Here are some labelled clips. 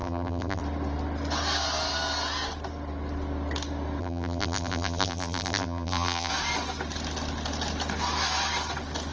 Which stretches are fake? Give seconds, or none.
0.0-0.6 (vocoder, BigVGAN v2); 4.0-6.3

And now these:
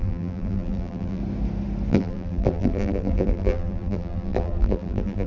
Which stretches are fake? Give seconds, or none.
0.0-1.2 (vocoder, BigVGAN v2); 1.9-5.3